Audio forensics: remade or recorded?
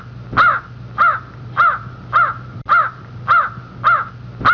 recorded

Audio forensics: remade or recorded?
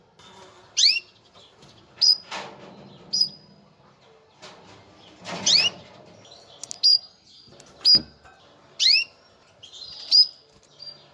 recorded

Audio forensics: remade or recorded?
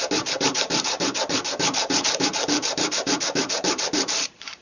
remade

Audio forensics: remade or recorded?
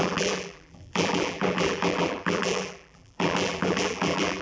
remade